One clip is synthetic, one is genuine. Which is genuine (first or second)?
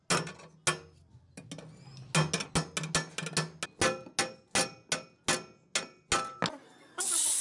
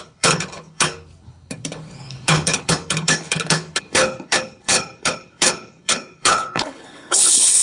first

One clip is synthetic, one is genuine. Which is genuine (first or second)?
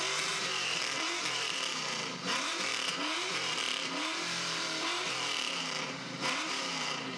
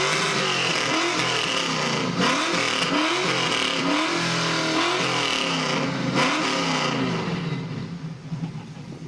second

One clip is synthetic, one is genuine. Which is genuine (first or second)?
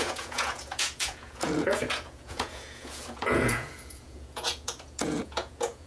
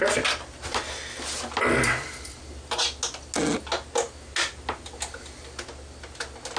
second